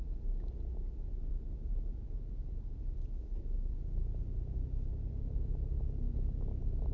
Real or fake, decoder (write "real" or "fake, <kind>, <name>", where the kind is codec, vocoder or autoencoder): real